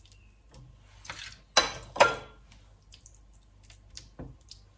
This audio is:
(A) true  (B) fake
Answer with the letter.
A